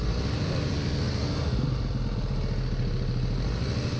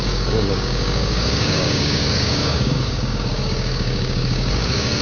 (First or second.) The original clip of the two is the first